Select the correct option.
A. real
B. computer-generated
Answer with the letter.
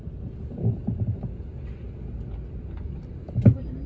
A